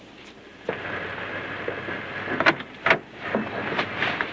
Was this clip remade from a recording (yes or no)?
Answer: no